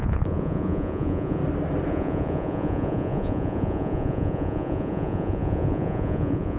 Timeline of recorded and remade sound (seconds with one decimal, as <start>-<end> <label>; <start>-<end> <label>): 0.0-1.4 remade; 1.4-1.9 recorded; 1.9-6.6 remade